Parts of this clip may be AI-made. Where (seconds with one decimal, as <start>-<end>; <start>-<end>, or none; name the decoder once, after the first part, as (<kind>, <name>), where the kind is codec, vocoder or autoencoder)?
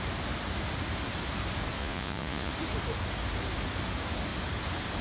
1.8-2.5 (vocoder, Vocos)